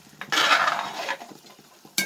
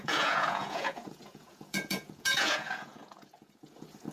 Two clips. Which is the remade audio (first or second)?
second